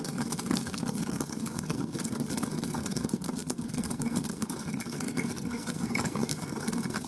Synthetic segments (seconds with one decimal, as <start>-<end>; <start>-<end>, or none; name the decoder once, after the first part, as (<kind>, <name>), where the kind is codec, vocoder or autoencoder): 0.0-7.1 (codec, SNAC)